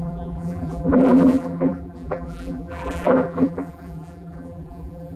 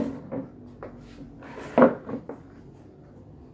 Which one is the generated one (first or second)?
first